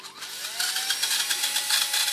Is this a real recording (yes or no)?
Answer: yes